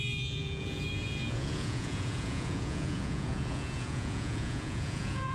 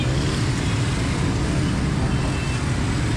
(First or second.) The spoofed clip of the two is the first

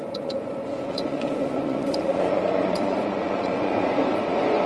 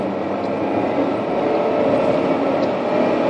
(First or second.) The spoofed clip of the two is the first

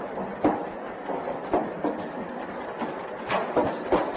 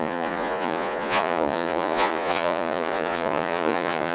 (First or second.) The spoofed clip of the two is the second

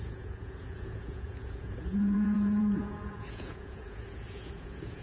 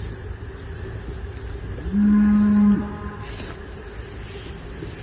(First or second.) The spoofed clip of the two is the first